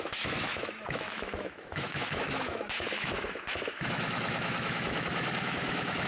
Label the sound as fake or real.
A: fake